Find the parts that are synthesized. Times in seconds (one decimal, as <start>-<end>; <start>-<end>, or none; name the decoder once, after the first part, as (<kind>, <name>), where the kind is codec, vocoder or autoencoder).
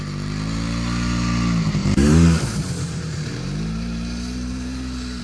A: 1.8-5.2 (vocoder, BigVGAN v2)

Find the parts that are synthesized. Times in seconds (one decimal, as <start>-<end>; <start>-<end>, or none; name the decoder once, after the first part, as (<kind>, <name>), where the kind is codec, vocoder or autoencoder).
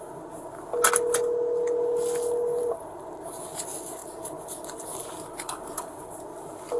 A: 2.6-3.3 (vocoder, BigVGAN v2); 4.0-6.2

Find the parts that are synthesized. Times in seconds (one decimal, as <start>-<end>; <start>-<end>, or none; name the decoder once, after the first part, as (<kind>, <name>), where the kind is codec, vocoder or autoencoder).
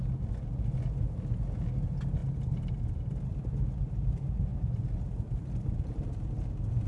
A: none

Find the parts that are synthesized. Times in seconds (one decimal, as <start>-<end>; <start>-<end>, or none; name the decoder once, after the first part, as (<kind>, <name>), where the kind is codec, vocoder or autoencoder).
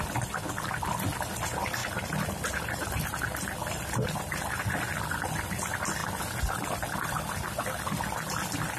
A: 0.0-6.0 (vocoder, BigVGAN v2); 6.5-8.8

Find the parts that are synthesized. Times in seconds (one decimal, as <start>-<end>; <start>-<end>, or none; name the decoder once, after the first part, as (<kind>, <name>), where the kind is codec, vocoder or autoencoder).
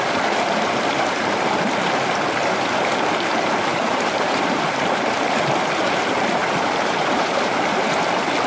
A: 3.7-4.7 (vocoder, BigVGAN v2); 6.4-8.0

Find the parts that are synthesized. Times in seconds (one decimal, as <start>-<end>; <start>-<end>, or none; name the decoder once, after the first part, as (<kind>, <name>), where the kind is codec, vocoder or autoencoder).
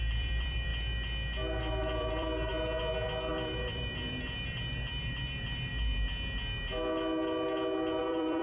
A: 0.0-0.7 (vocoder, BigVGAN v2); 1.7-2.5; 3.3-5.7; 8.0-8.4